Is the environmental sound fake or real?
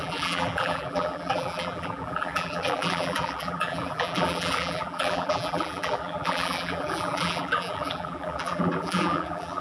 fake